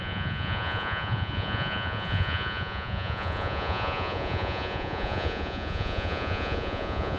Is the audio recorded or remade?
remade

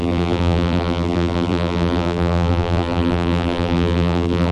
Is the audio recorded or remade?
remade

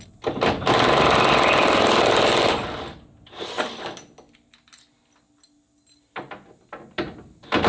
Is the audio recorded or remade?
recorded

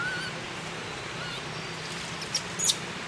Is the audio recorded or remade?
recorded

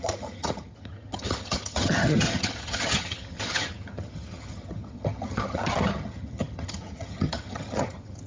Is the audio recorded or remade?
remade